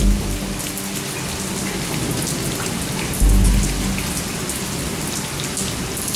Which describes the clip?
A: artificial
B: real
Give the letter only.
B